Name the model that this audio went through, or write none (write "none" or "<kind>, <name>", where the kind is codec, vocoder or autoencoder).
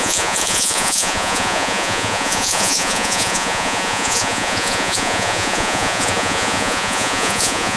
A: vocoder, Vocos